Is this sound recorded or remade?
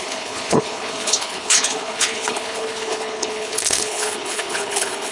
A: remade